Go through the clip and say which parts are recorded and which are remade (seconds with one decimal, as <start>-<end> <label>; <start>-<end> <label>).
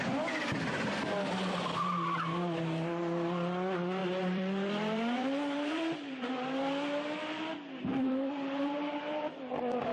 0.0-4.0 recorded; 4.0-6.5 remade; 6.5-7.9 recorded; 7.9-9.5 remade; 9.5-9.9 recorded